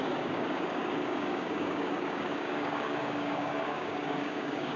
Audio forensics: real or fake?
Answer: fake